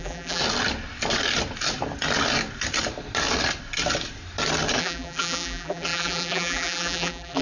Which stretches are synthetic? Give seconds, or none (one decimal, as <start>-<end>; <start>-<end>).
0.0-0.4; 4.8-7.4